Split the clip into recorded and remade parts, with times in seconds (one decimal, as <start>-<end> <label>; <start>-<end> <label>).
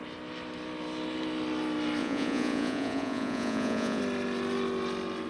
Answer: 0.0-2.0 recorded; 2.0-4.0 remade; 4.0-5.3 recorded